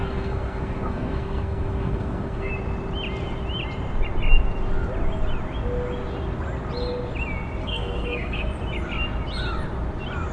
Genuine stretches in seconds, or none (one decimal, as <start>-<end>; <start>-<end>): 2.5-7.6; 8.5-10.3